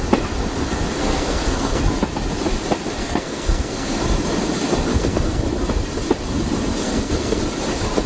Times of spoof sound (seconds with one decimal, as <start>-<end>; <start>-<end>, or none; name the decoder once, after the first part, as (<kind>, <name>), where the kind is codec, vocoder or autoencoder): 1.0-1.8 (codec, SNAC); 3.0-4.0; 4.9-5.4; 6.8-7.4